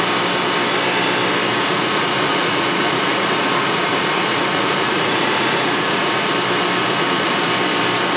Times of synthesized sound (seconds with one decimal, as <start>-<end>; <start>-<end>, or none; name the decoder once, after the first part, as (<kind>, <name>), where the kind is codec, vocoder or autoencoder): 1.5-6.3 (vocoder, Vocos); 6.8-7.5